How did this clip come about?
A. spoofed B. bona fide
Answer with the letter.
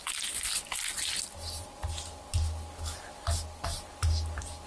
B